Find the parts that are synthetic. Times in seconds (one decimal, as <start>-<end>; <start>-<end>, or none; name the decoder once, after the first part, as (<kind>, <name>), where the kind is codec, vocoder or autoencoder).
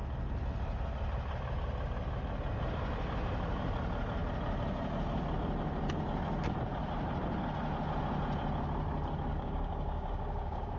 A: 9.3-10.8 (codec, DAC)